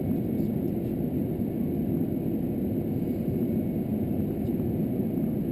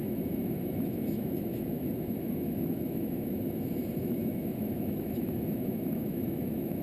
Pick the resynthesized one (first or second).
second